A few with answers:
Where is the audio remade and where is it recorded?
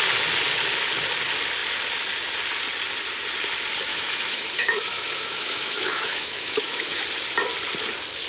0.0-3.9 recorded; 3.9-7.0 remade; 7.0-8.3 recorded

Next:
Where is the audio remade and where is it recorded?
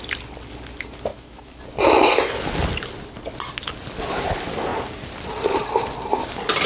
0.0-1.1 recorded; 1.1-1.6 remade; 1.6-6.7 recorded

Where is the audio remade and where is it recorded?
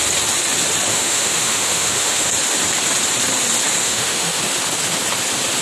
0.0-0.9 recorded; 0.9-2.3 remade; 2.3-3.8 recorded; 3.8-4.4 remade; 4.4-5.6 recorded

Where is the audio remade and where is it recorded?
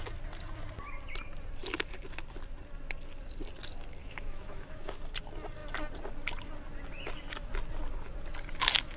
0.0-4.0 recorded; 4.0-4.9 remade; 4.9-9.0 recorded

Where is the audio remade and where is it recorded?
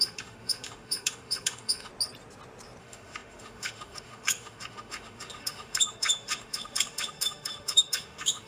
0.0-1.9 remade; 1.9-2.8 recorded; 2.8-8.5 remade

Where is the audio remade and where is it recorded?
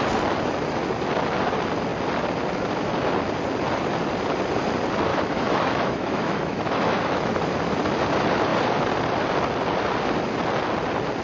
0.0-5.1 recorded; 5.1-7.4 remade; 7.4-11.2 recorded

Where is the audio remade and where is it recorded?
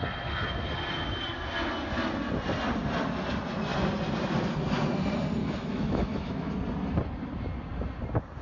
0.0-5.4 recorded; 5.4-6.5 remade; 6.5-8.4 recorded